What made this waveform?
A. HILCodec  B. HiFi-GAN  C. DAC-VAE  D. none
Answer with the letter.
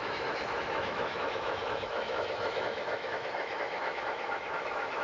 C